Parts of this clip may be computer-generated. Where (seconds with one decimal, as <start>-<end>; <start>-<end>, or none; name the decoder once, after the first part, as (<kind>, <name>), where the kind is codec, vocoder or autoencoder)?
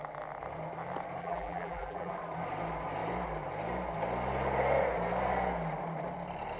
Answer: 1.2-2.1 (vocoder, BigVGAN v2)